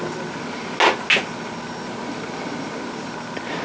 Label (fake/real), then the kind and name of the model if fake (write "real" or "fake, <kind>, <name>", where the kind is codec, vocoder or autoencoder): real